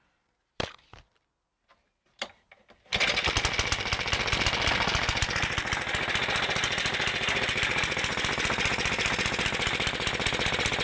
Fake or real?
real